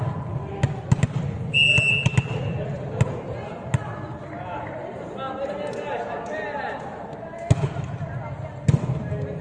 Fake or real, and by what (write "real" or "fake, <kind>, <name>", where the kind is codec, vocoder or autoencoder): real